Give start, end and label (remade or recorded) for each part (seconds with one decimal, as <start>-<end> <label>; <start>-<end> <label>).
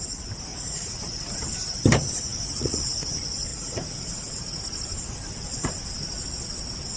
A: 0.0-0.5 recorded; 0.5-1.4 remade; 1.4-2.3 recorded; 2.3-2.8 remade; 2.8-3.5 recorded; 3.5-4.6 remade; 4.6-7.0 recorded